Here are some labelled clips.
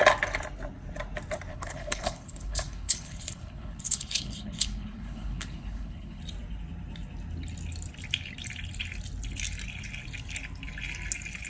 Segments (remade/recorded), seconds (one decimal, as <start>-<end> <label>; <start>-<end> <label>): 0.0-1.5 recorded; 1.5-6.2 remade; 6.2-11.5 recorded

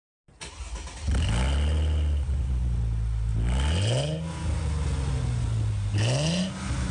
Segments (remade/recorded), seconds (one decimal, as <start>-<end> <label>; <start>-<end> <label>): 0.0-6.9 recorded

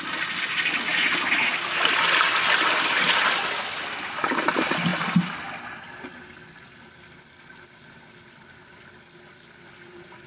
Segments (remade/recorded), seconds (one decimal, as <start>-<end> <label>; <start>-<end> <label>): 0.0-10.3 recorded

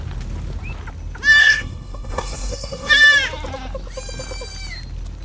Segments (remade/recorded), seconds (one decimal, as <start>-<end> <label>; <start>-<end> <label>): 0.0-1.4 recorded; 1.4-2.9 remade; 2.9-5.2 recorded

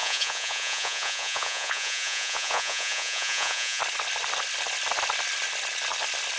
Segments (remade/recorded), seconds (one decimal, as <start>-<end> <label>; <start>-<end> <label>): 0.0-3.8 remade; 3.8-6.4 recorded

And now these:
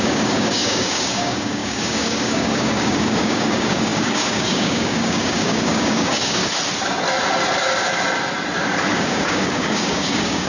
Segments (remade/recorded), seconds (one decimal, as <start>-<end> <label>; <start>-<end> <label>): 0.0-6.4 remade; 6.4-8.9 recorded; 8.9-10.5 remade

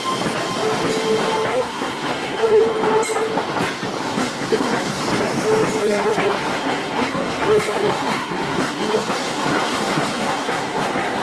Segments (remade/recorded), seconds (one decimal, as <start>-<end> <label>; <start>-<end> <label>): 0.0-1.5 recorded; 1.5-2.6 remade; 2.6-4.0 recorded; 4.0-5.0 remade; 5.0-5.8 recorded; 5.8-11.2 remade

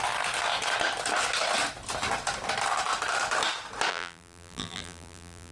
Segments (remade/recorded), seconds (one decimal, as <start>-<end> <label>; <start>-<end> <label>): 0.0-3.9 recorded; 3.9-5.5 remade